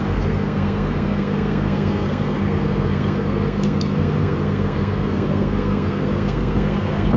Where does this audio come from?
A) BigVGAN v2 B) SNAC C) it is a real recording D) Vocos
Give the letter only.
B